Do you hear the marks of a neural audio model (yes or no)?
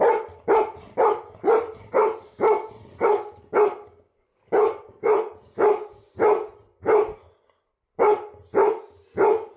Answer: no